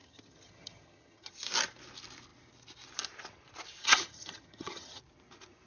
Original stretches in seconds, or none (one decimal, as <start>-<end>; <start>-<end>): 1.3-3.8; 5.0-5.7

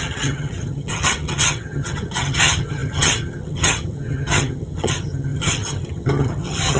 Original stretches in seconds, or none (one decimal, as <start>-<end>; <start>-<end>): none